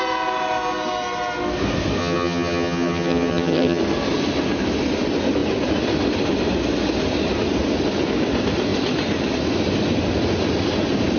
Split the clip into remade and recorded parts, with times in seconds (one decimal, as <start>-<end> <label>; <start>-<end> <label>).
0.0-2.0 recorded; 2.0-3.8 remade; 3.8-11.2 recorded